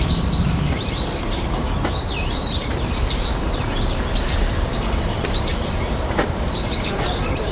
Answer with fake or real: fake